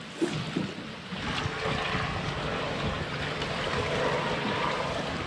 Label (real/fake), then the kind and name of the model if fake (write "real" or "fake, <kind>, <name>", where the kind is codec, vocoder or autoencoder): real